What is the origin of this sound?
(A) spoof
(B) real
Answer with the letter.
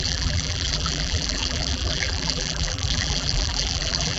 A